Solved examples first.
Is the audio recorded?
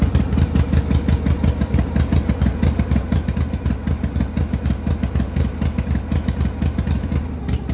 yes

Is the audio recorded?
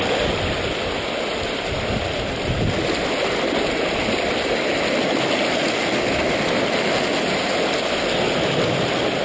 yes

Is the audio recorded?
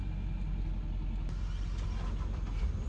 yes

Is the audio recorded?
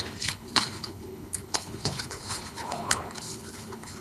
no